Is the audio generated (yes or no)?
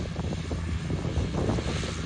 no